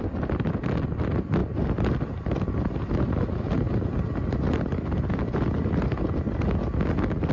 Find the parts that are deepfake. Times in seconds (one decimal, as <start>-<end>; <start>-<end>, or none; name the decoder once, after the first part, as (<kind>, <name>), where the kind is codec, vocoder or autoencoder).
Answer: none